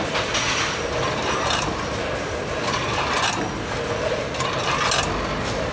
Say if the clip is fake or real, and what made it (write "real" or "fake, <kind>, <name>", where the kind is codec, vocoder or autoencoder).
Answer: real